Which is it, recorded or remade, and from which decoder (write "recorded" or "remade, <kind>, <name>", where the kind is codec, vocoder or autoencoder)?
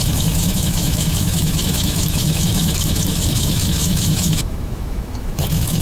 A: remade, autoencoder, DAC-VAE